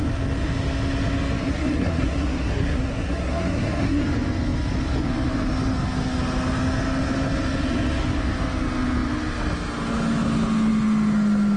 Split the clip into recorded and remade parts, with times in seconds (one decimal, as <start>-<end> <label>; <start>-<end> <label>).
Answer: 0.0-1.4 recorded; 1.4-4.0 remade; 4.0-11.6 recorded